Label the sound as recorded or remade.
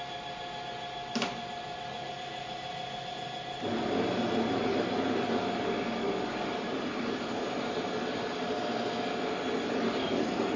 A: recorded